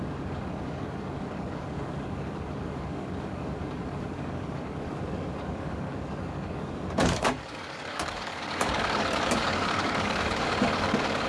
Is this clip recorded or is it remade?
remade